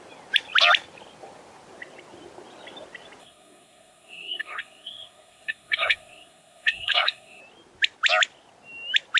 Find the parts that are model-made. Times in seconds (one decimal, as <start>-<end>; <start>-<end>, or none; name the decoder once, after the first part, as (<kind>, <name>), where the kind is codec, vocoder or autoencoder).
3.2-7.4 (codec, SNAC)